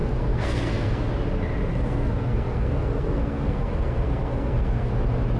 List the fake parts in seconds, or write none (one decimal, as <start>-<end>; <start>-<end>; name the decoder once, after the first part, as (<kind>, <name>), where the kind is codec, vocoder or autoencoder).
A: 0.0-1.1 (codec, SNAC); 1.7-4.9